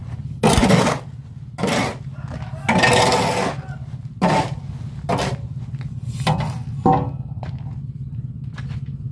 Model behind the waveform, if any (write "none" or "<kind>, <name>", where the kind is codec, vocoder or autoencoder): none